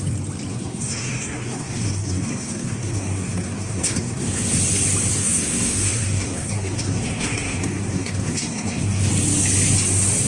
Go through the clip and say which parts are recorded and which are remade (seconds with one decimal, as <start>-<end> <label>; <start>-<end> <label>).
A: 0.0-0.5 recorded; 0.5-4.6 remade; 4.6-5.1 recorded; 5.1-9.1 remade; 9.1-10.3 recorded